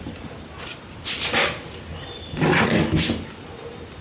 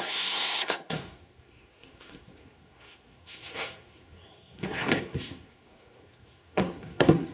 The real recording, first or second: first